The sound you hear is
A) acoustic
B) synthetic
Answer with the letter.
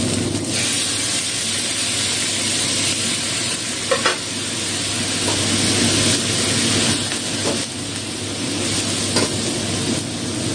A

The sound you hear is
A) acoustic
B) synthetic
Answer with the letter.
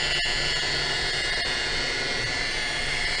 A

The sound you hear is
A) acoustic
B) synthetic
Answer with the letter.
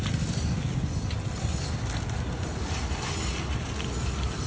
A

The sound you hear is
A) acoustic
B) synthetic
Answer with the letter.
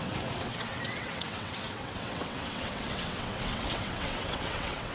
B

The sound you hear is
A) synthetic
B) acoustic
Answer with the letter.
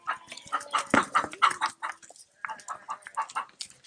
B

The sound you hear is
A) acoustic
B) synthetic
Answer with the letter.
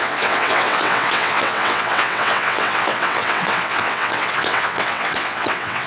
B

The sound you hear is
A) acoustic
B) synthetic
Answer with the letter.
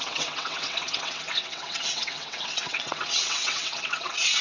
B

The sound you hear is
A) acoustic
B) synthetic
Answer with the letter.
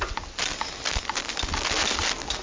A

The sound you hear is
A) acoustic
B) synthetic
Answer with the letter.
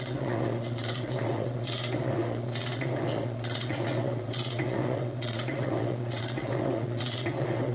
B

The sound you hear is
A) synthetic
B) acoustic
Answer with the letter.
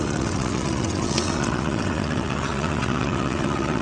A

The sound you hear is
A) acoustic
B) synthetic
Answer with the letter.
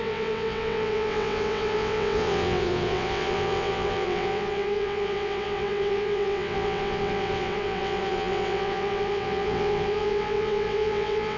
B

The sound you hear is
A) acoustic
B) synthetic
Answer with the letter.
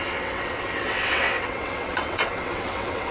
B